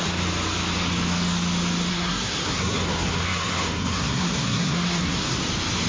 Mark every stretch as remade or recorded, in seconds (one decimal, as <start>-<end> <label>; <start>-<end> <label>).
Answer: 0.0-1.9 recorded; 1.9-5.4 remade; 5.4-5.9 recorded